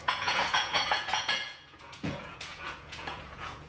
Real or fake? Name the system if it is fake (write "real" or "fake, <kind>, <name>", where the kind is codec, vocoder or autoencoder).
fake, vocoder, Vocos